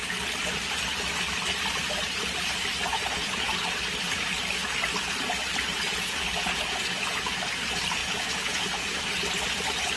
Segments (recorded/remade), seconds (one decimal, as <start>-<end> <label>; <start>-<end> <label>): 0.0-2.9 recorded; 2.9-3.5 remade; 3.5-5.9 recorded; 5.9-7.4 remade; 7.4-8.0 recorded; 8.0-9.0 remade; 9.0-10.0 recorded